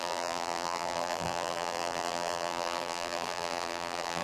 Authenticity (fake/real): fake